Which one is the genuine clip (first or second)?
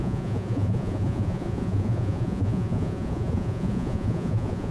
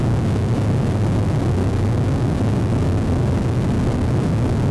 second